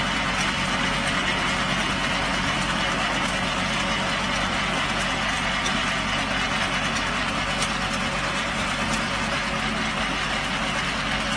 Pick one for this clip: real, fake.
real